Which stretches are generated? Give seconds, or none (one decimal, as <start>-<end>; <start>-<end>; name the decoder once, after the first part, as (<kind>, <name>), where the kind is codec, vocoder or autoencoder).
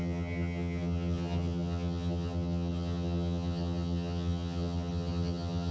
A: 0.0-5.7 (vocoder, HiFi-GAN)